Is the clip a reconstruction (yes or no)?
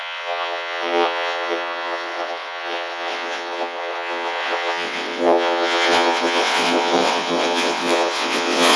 yes